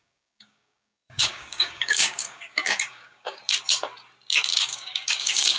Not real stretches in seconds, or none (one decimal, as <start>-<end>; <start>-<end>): 0.0-3.4; 4.5-5.6